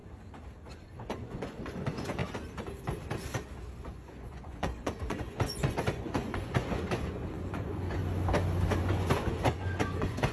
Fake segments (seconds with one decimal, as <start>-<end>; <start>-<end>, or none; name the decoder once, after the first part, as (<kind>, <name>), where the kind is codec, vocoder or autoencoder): 0.7-2.2 (vocoder, Vocos); 3.8-8.0; 8.8-10.3